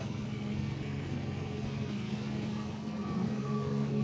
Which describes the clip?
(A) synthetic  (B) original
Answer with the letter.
A